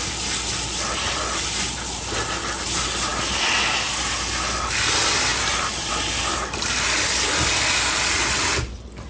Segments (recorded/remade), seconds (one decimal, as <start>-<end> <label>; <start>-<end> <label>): 0.0-3.1 recorded; 3.1-3.9 remade; 3.9-5.3 recorded; 5.3-5.9 remade; 5.9-9.1 recorded